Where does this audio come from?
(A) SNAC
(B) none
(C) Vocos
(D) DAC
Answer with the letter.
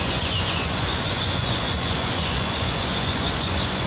C